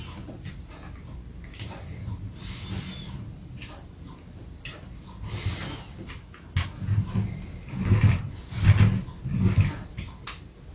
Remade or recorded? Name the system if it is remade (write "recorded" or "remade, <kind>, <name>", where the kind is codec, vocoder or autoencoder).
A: recorded